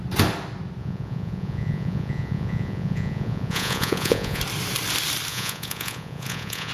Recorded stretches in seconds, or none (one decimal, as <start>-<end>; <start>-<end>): 0.0-0.8; 4.4-5.3